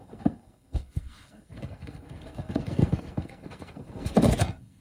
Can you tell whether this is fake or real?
fake